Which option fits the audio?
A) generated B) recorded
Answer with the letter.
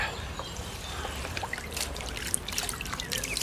A